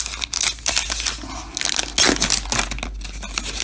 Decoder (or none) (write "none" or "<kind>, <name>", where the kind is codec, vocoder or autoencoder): none